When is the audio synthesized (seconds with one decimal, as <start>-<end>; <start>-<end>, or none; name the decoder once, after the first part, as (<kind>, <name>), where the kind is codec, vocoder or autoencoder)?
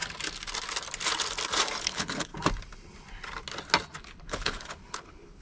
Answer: 1.8-2.3 (codec, HILCodec); 4.0-5.4